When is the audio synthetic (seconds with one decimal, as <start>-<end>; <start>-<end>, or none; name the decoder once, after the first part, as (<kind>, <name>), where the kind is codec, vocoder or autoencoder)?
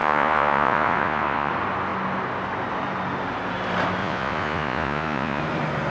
0.0-1.5 (vocoder, Vocos); 4.0-5.4